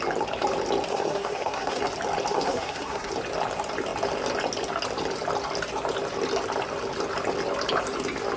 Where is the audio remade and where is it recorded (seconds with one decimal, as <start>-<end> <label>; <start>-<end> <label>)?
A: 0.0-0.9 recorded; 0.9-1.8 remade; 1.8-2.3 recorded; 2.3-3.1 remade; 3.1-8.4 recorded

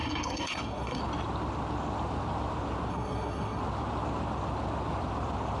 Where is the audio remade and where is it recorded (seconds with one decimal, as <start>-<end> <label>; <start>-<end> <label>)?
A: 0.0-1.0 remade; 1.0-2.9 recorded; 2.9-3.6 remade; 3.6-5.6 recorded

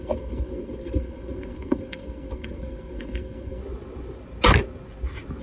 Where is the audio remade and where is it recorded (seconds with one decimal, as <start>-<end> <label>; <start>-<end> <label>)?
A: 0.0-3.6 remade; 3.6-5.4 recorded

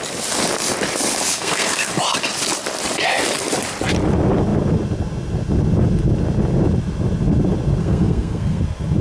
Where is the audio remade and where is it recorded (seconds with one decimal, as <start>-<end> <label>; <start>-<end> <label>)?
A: 0.0-1.3 recorded; 1.3-1.9 remade; 1.9-7.8 recorded; 7.8-8.6 remade; 8.6-9.0 recorded